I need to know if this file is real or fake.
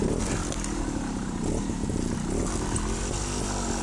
real